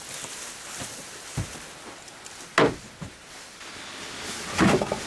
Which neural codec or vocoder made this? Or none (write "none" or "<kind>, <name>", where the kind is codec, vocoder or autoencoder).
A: none